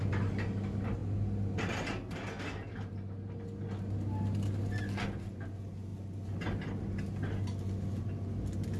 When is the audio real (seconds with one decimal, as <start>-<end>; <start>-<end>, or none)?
0.0-8.8

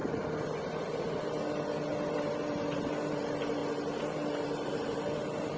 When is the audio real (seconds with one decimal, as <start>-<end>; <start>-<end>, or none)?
0.0-5.6